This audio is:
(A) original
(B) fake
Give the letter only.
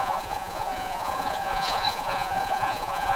B